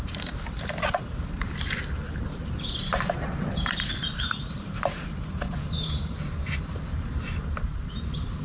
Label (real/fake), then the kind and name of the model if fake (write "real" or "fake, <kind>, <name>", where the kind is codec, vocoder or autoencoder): fake, vocoder, BigVGAN v2